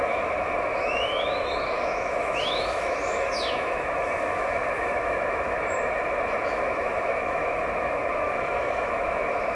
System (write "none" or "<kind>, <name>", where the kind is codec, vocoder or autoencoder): autoencoder, DAC-VAE